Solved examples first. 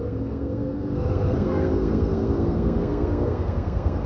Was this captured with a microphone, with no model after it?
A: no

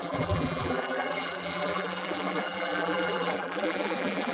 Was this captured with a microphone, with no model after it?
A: no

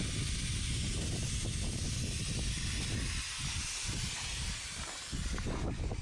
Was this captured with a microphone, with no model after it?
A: yes